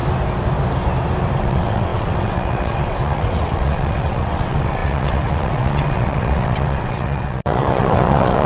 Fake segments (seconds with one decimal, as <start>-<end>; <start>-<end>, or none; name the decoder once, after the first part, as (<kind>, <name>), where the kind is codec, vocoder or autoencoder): 1.4-8.5 (vocoder, WaveNeXt)